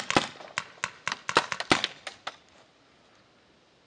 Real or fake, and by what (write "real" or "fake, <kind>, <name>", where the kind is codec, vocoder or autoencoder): real